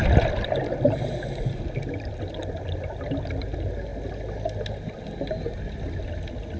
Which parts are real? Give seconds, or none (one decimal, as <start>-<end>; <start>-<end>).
0.0-6.6